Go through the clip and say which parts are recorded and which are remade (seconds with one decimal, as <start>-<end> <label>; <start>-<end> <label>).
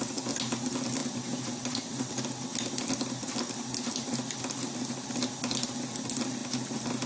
0.0-7.1 recorded